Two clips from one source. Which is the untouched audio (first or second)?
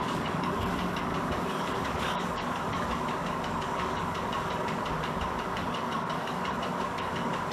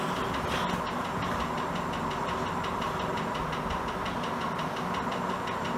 second